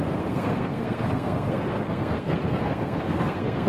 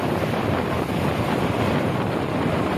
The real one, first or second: second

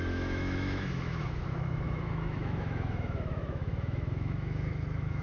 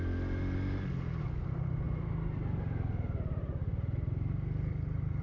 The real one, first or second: second